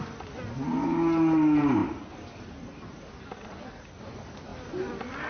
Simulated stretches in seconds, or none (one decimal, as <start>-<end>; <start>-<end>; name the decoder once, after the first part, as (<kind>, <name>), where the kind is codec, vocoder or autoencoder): none